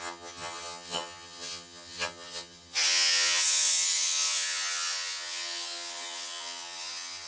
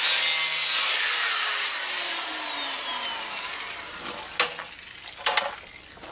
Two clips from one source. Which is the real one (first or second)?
second